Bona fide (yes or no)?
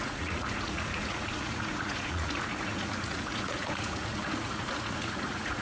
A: no